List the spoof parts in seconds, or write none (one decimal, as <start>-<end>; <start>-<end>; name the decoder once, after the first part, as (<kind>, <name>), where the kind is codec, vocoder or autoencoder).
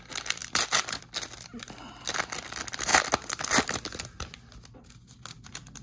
none